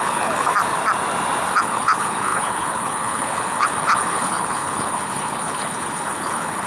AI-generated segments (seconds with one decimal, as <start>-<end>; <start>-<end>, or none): 0.0-0.5; 1.5-6.7